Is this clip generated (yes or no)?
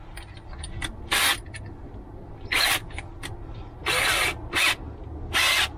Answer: no